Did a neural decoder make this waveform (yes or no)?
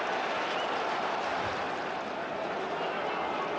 no